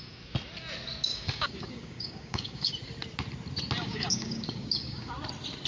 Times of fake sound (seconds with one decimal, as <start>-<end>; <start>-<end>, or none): 1.1-2.7; 3.8-5.1